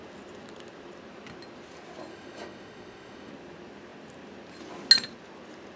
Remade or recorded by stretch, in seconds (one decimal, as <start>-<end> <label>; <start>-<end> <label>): 0.0-2.1 recorded; 2.1-3.3 remade; 3.3-5.8 recorded